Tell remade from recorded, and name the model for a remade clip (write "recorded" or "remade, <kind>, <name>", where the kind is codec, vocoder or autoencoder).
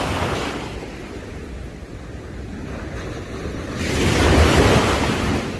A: remade, vocoder, BigVGAN v2